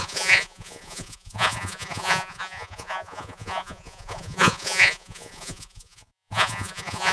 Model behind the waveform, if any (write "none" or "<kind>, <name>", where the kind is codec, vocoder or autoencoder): vocoder, Vocos